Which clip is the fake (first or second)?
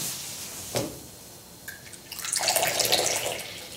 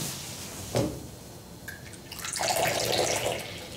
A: first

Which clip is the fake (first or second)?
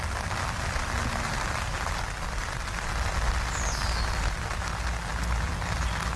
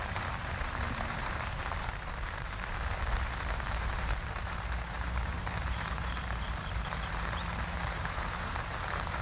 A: second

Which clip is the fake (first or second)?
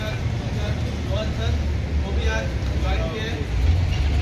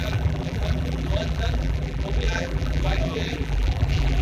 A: second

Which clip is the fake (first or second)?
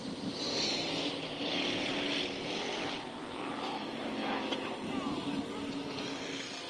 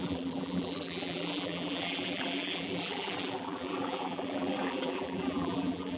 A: second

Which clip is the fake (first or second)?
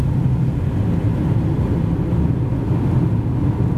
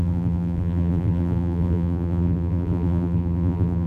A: second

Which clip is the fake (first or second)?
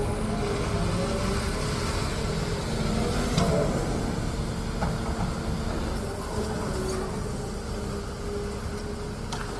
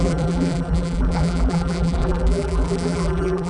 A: second